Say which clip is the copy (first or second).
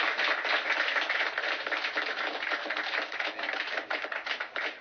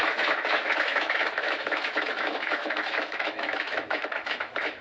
second